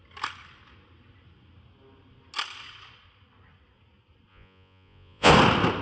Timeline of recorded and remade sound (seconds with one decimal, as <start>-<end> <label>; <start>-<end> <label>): 0.0-4.3 recorded; 4.3-5.3 remade; 5.3-5.8 recorded